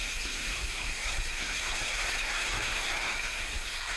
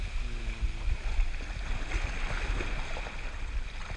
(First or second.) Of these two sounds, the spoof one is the first